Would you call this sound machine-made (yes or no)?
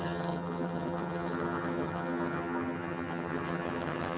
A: yes